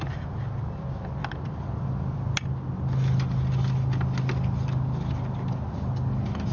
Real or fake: real